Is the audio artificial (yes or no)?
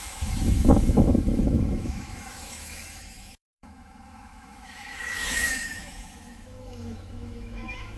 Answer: yes